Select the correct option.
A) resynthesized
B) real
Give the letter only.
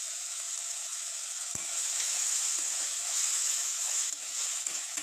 A